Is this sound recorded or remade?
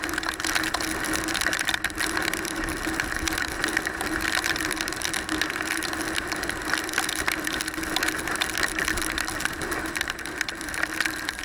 recorded